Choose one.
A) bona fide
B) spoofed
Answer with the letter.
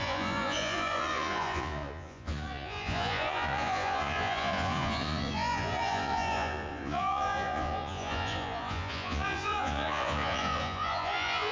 B